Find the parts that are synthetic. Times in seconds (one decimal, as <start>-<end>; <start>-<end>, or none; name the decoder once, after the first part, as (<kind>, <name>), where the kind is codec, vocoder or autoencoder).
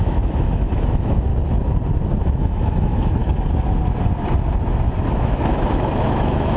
0.0-1.3 (autoencoder, DAC-VAE); 2.2-3.2; 5.1-6.6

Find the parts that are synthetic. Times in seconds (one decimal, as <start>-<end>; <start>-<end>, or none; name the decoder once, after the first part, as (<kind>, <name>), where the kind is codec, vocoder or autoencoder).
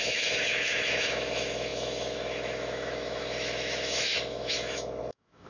0.0-5.5 (autoencoder, DAC-VAE)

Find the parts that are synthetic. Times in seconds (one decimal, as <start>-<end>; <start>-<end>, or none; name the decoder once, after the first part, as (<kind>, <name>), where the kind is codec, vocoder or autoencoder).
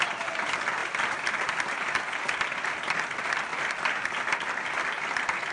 none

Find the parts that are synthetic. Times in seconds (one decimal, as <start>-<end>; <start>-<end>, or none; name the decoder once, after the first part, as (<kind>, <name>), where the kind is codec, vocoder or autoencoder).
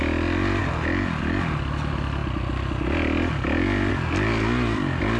none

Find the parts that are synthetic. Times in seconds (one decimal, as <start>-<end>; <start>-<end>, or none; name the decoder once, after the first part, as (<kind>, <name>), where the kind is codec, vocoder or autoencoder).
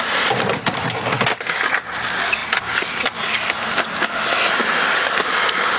none